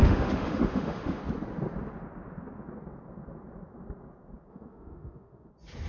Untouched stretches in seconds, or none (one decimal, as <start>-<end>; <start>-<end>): 1.2-4.5; 5.5-5.9